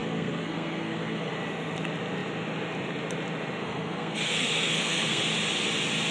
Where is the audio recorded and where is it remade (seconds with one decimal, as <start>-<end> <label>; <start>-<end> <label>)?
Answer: 0.0-1.3 remade; 1.3-3.6 recorded; 3.6-5.2 remade; 5.2-6.1 recorded